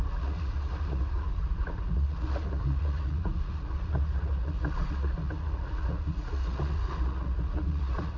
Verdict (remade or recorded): remade